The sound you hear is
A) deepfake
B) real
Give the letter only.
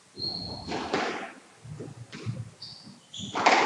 B